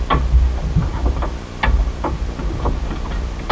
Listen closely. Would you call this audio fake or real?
real